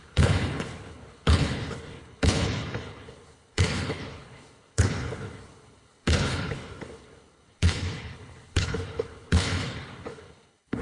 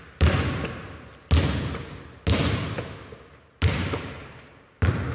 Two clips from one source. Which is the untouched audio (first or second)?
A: second